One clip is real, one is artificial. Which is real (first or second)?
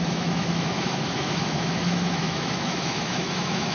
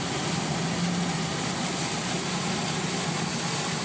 second